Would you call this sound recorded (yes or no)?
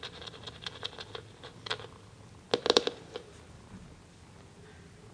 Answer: yes